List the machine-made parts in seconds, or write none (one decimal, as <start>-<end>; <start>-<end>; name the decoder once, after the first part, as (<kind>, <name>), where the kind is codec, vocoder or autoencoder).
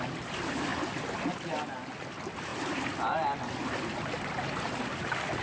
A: none